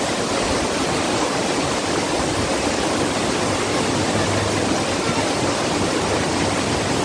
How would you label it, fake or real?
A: real